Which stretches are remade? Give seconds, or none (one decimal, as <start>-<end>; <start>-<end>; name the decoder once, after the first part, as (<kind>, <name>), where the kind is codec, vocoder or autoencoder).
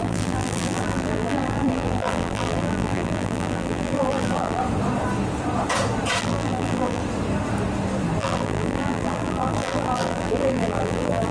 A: 0.0-4.6 (vocoder, BigVGAN v2); 6.2-7.0; 8.2-11.3